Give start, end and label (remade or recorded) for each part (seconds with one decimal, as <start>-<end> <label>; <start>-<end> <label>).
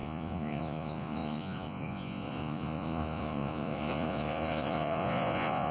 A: 0.0-5.7 remade